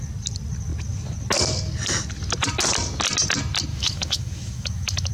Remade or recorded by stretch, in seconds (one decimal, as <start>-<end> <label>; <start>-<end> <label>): 0.0-3.7 recorded; 3.7-5.1 remade